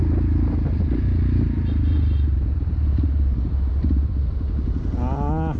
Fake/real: real